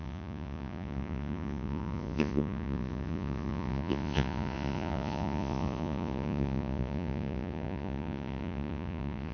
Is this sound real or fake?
fake